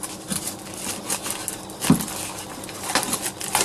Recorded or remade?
recorded